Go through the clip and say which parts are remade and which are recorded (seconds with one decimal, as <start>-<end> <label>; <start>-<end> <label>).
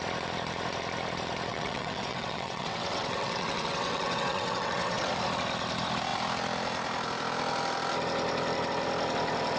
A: 0.0-1.5 recorded; 1.5-5.1 remade; 5.1-9.6 recorded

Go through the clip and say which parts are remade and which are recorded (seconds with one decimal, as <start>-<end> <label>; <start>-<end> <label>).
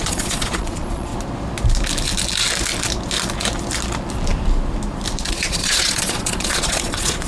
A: 0.0-1.1 remade; 1.1-5.3 recorded; 5.3-7.3 remade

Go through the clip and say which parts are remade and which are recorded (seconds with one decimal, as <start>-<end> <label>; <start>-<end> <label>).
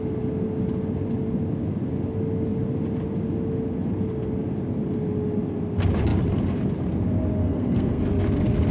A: 0.0-7.4 recorded; 7.4-8.0 remade; 8.0-8.7 recorded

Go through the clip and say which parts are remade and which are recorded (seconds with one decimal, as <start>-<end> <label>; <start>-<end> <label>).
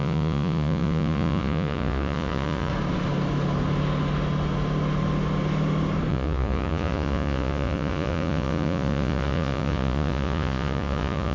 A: 0.0-2.7 remade; 2.7-6.1 recorded; 6.1-11.3 remade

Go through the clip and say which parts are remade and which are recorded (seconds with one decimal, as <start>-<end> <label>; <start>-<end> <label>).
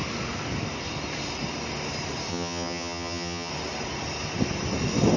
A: 0.0-2.3 recorded; 2.3-3.5 remade; 3.5-5.2 recorded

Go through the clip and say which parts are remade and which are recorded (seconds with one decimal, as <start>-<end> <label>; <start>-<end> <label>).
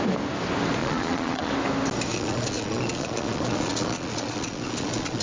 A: 0.0-0.8 recorded; 0.8-1.5 remade; 1.5-2.1 recorded; 2.1-5.2 remade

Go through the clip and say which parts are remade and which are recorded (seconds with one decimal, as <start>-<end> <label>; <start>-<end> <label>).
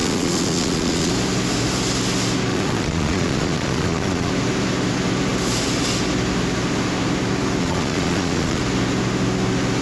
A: 0.0-1.1 remade; 1.1-2.5 recorded; 2.5-4.3 remade; 4.3-7.6 recorded; 7.6-8.6 remade; 8.6-9.8 recorded